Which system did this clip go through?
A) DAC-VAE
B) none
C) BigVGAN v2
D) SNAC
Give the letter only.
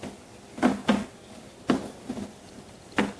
B